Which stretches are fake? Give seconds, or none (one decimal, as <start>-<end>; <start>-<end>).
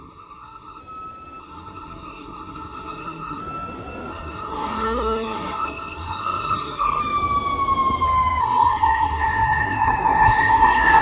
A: 0.0-0.8; 1.4-3.4; 4.1-7.0; 8.4-11.0